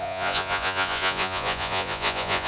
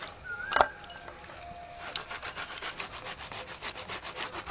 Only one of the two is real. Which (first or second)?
second